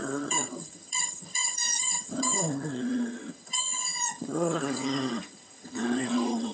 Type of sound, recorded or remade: remade